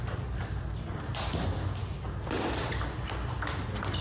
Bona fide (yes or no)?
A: yes